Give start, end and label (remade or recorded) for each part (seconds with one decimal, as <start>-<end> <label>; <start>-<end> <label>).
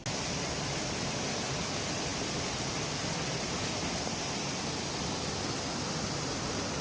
0.0-6.8 recorded